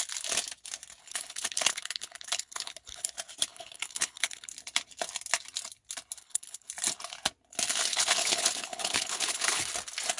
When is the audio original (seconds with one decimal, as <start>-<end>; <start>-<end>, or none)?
0.0-1.0; 3.1-3.5; 4.5-6.2; 6.7-7.9; 9.7-10.2

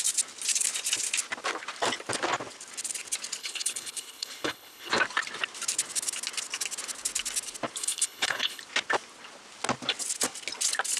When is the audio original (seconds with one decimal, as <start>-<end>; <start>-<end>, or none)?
0.0-3.4; 4.9-7.8; 8.6-11.0

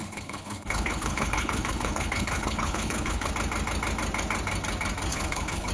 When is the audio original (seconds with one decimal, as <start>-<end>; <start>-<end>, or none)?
3.3-5.1

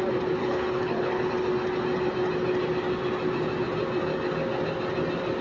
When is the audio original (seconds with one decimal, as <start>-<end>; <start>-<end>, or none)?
0.0-0.4; 1.3-5.4

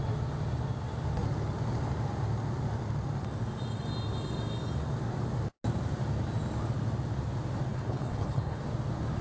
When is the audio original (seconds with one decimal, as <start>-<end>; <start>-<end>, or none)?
0.0-7.7; 8.6-9.2

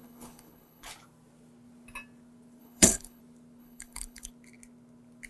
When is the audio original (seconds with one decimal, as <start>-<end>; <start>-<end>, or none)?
0.9-2.6; 3.2-3.6; 4.3-5.3